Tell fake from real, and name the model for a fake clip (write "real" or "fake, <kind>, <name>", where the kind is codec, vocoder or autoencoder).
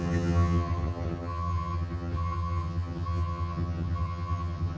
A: fake, vocoder, HiFi-GAN